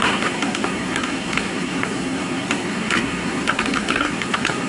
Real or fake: fake